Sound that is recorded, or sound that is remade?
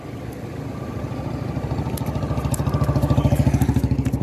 recorded